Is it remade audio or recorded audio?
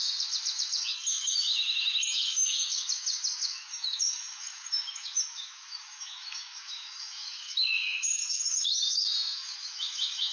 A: remade